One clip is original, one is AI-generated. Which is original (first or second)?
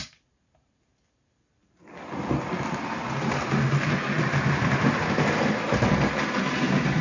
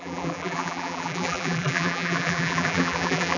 first